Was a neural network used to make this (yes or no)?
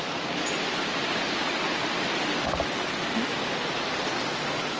no